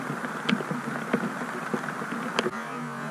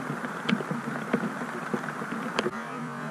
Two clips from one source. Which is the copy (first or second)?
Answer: second